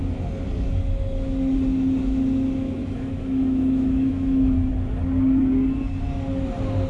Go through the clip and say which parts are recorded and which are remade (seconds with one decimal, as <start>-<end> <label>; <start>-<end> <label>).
0.0-2.8 recorded; 2.8-4.7 remade; 4.7-6.9 recorded